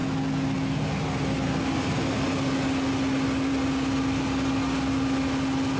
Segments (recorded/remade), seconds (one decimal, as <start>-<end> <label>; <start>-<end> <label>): 0.0-5.8 recorded